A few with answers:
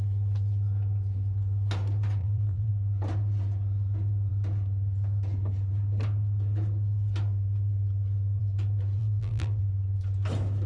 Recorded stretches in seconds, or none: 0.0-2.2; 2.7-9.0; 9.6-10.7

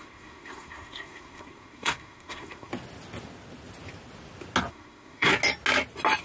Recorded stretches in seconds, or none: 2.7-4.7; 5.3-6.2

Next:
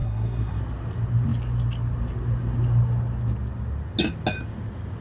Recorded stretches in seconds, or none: 0.6-5.0

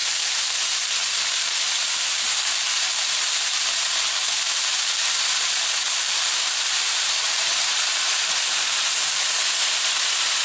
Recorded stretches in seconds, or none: none

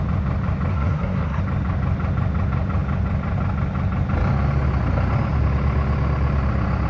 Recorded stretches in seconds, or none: 0.0-0.7; 1.4-6.9

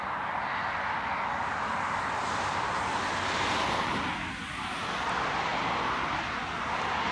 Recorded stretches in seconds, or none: 0.0-7.1

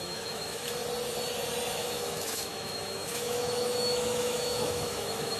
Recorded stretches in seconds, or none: 0.8-1.7

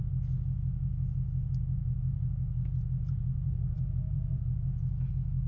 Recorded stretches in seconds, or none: 0.0-1.8; 5.1-5.5